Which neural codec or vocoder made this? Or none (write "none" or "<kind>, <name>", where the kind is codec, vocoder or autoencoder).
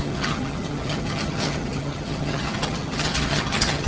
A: vocoder, HiFi-GAN